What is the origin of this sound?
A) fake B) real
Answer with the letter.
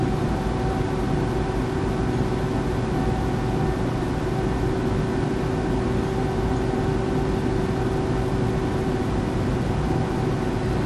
B